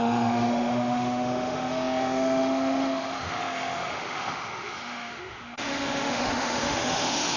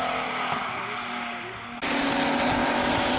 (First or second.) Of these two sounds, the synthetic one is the first